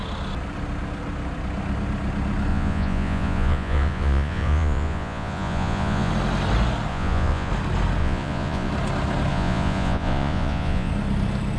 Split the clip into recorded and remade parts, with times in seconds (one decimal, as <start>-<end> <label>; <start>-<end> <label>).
0.0-2.5 recorded; 2.5-6.1 remade; 6.1-6.9 recorded; 6.9-7.5 remade; 7.5-8.0 recorded; 8.0-8.7 remade; 8.7-9.3 recorded; 9.3-10.9 remade; 10.9-11.6 recorded